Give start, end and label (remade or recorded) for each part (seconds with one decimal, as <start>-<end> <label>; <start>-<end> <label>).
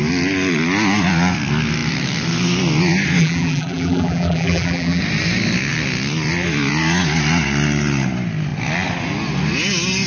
0.0-3.2 recorded; 3.2-5.0 remade; 5.0-10.1 recorded